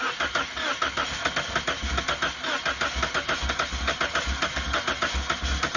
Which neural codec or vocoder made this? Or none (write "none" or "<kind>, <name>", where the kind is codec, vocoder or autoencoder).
none